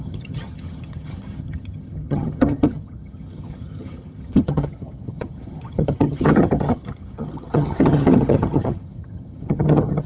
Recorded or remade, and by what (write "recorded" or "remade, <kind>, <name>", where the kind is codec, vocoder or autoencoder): remade, vocoder, HiFi-GAN